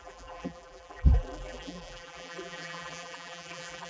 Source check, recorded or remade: remade